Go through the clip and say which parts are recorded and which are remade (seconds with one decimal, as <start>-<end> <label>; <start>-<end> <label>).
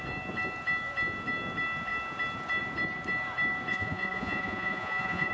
0.0-3.7 recorded; 3.7-5.3 remade